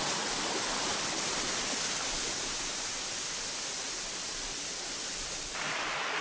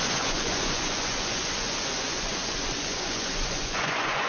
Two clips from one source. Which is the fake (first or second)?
second